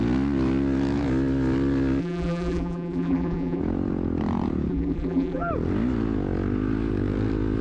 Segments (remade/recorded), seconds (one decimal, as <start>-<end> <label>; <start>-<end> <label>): 0.0-2.0 recorded; 2.0-3.6 remade; 3.6-4.7 recorded; 4.7-5.5 remade; 5.5-7.6 recorded